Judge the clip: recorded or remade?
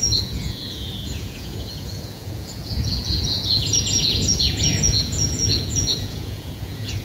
remade